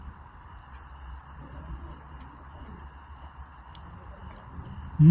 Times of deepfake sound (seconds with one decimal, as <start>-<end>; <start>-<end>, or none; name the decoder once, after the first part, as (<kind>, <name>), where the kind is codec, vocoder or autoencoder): 0.6-3.7 (vocoder, Vocos)